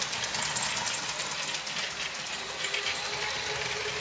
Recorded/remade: recorded